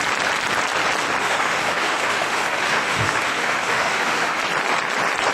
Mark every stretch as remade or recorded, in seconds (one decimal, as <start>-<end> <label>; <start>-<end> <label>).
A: 0.0-1.2 recorded; 1.2-4.4 remade; 4.4-5.3 recorded